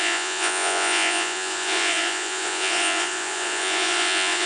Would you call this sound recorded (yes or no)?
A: no